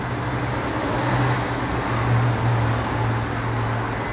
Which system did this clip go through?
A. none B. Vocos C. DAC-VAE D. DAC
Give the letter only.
A